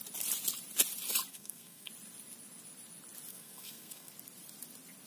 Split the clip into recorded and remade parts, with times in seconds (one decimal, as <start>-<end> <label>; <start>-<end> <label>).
0.0-1.3 recorded; 1.3-1.9 remade; 1.9-3.3 recorded; 3.3-4.1 remade; 4.1-5.1 recorded